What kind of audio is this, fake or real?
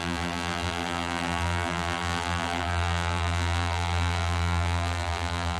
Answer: fake